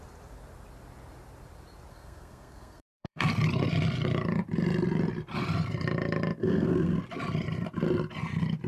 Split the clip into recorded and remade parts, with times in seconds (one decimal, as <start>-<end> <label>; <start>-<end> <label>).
0.0-1.9 recorded; 1.9-3.3 remade; 3.3-6.4 recorded; 6.4-7.0 remade; 7.0-8.7 recorded